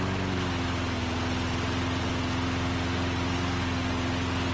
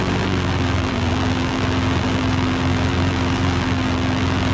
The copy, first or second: second